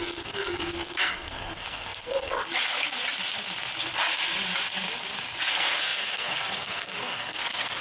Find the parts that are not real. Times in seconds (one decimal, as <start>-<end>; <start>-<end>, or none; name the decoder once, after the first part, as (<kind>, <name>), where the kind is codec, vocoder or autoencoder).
0.0-2.4 (codec, SNAC); 5.5-7.8